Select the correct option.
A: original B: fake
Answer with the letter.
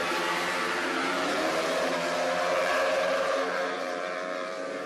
B